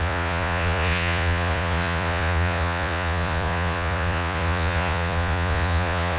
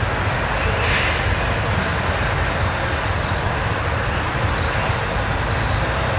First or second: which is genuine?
second